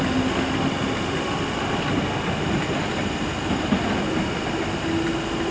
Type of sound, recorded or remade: recorded